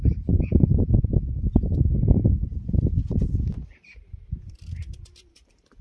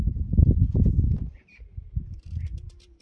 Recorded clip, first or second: second